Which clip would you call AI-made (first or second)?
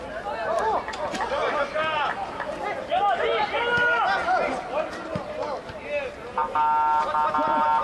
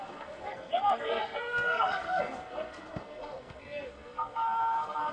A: second